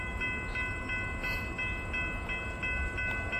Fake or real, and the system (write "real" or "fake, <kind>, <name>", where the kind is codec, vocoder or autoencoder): real